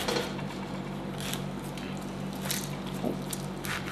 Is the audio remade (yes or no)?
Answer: no